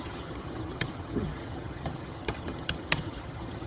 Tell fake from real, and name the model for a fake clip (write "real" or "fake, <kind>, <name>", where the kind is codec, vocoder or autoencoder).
fake, vocoder, HiFi-GAN